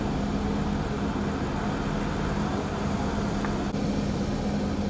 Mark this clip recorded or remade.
recorded